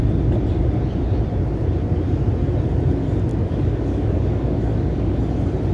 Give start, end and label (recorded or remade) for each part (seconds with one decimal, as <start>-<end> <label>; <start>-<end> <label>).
0.0-3.3 recorded; 3.3-5.2 remade; 5.2-5.7 recorded